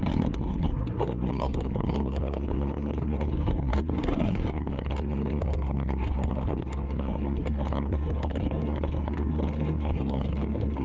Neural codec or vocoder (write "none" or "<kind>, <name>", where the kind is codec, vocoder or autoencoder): codec, SNAC